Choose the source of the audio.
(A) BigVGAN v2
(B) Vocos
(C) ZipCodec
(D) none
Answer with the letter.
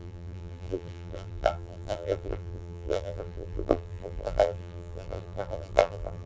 A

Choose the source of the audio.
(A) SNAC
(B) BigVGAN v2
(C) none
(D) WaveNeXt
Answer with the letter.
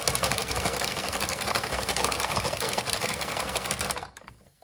A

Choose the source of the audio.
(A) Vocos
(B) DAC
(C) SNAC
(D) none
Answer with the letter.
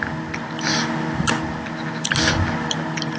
D